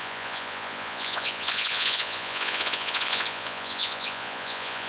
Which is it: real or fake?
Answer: fake